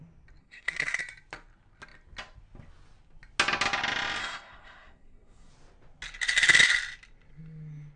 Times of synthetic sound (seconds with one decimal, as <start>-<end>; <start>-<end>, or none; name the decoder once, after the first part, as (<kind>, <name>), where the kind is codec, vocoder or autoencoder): 0.4-1.0 (codec, SNAC); 4.2-5.5